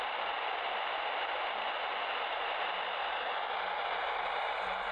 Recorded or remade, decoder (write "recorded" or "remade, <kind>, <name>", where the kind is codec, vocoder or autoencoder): recorded